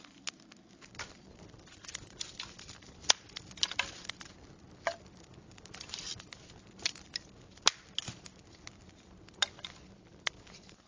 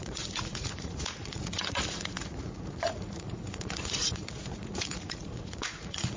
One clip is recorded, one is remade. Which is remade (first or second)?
second